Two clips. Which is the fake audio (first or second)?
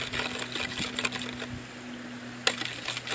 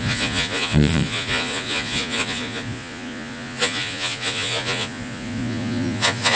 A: second